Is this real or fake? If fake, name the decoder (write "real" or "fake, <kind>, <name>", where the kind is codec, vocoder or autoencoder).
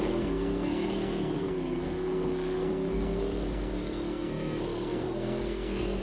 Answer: fake, codec, SNAC